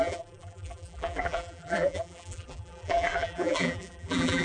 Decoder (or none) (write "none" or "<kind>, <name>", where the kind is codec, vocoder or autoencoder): vocoder, BigVGAN v2